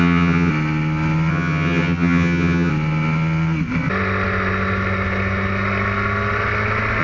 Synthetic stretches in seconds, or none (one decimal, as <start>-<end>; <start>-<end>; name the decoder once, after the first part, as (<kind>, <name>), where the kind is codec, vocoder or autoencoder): 0.0-0.5 (vocoder, HiFi-GAN); 1.3-2.7